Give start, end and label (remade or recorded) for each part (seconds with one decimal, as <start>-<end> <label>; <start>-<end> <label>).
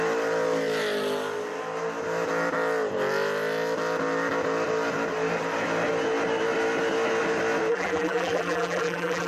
0.0-7.7 recorded; 7.7-9.3 remade